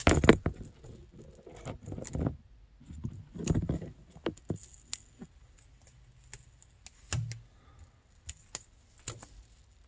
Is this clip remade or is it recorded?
recorded